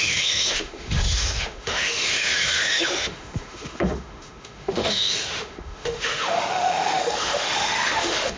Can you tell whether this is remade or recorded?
remade